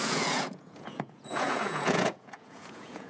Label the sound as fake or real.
fake